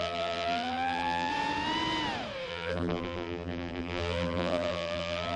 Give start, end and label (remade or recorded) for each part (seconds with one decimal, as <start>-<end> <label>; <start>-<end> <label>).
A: 0.0-1.3 remade; 1.3-2.5 recorded; 2.5-5.4 remade